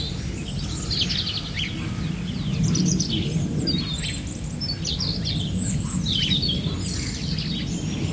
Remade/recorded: recorded